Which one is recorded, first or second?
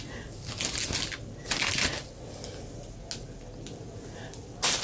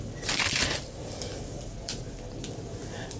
first